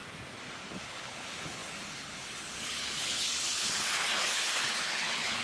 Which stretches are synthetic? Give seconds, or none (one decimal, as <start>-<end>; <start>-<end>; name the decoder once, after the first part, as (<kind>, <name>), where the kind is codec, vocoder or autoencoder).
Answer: 0.7-5.4 (codec, HILCodec)